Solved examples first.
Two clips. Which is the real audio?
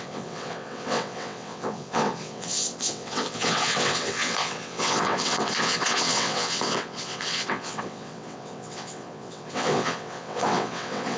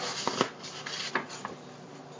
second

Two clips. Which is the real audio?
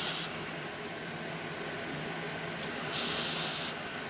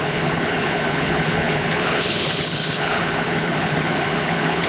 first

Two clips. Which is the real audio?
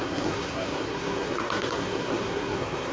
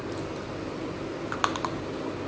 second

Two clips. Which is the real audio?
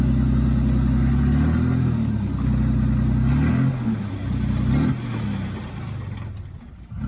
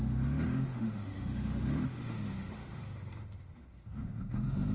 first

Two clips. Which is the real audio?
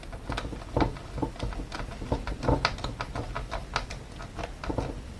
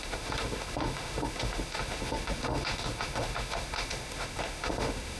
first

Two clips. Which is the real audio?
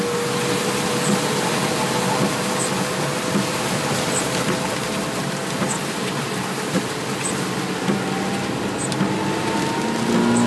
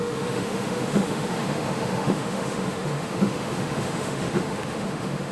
first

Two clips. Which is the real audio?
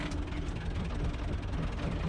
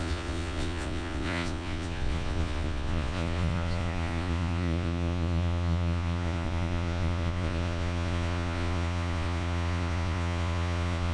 first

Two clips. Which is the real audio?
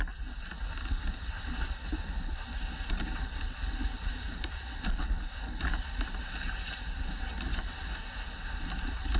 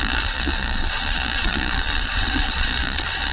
first